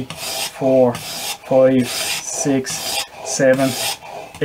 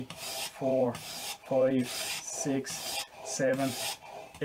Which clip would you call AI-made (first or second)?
second